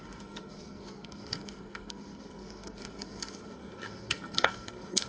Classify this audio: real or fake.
fake